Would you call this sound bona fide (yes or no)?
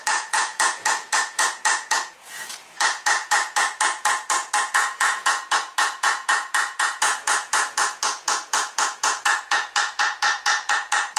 no